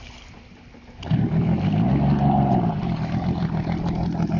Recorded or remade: recorded